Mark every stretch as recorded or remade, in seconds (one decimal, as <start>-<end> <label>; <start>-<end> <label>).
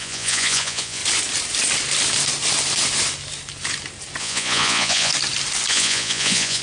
0.0-1.0 remade; 1.0-4.2 recorded; 4.2-5.1 remade; 5.1-5.7 recorded; 5.7-6.6 remade